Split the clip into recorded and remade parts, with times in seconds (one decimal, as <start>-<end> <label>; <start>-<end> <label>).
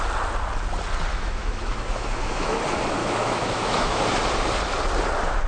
0.0-1.1 recorded; 1.1-2.6 remade; 2.6-3.0 recorded; 3.0-4.0 remade; 4.0-5.5 recorded